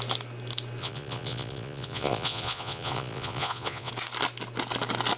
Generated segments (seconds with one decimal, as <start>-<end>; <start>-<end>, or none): 0.8-3.9